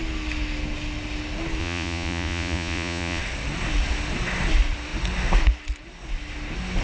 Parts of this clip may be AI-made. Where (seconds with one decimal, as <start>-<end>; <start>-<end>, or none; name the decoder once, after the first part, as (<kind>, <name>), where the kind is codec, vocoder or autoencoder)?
1.6-3.2 (vocoder, Vocos)